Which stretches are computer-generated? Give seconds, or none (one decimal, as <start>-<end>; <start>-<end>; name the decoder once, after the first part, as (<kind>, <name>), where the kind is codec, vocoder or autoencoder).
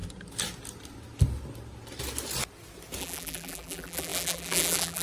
3.0-5.0 (vocoder, BigVGAN v2)